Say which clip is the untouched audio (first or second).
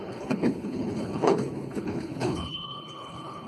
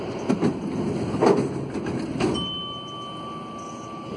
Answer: second